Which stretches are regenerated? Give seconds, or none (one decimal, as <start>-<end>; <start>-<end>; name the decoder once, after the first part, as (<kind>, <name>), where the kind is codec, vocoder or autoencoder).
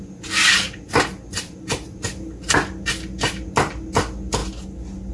none